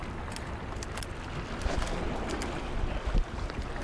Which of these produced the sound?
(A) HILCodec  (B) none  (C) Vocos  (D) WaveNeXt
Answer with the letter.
B